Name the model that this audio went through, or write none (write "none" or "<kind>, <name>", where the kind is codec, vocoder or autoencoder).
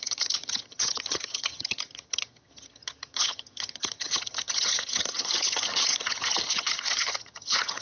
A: vocoder, HiFi-GAN